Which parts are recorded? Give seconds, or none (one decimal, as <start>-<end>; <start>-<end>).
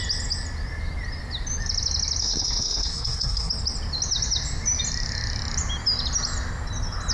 0.0-2.2; 3.5-7.1